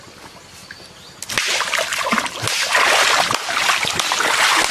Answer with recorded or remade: recorded